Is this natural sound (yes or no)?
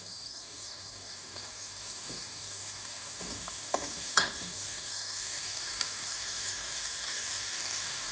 no